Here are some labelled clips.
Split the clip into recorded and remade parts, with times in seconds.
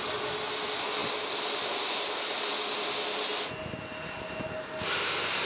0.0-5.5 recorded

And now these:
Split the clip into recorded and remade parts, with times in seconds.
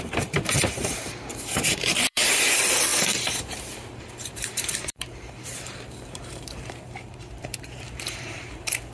0.0-8.9 remade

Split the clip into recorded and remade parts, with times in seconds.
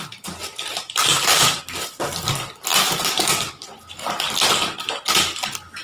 0.0-1.1 recorded; 1.1-1.6 remade; 1.6-5.8 recorded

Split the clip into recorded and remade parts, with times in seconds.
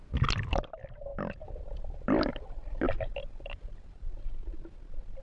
0.0-1.1 recorded; 1.1-4.2 remade; 4.2-5.2 recorded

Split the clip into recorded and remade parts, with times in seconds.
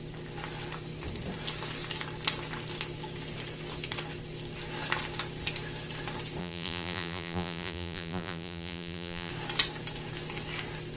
0.0-6.4 recorded; 6.4-9.3 remade; 9.3-11.0 recorded